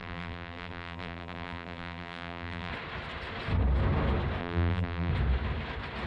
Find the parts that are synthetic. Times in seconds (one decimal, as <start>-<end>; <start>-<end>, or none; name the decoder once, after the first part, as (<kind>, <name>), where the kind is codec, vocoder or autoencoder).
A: 0.0-2.7 (vocoder, BigVGAN v2); 4.4-5.1